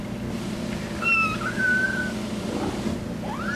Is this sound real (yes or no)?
yes